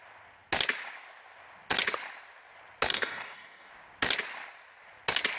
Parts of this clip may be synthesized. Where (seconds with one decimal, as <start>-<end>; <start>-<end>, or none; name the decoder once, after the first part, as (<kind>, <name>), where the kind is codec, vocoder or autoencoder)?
2.9-3.7 (codec, DAC)